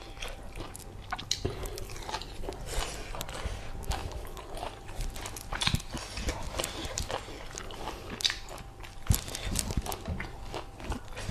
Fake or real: real